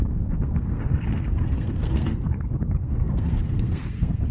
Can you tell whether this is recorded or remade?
remade